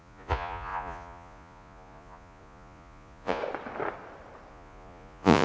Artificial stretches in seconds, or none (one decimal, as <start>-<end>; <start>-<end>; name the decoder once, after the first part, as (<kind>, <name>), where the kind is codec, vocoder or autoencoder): 0.0-3.4 (vocoder, Vocos); 4.5-5.4